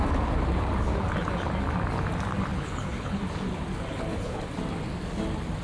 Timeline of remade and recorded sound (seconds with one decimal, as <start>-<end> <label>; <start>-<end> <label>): 0.0-2.5 recorded; 2.5-3.2 remade; 3.2-3.9 recorded; 3.9-4.5 remade; 4.5-5.6 recorded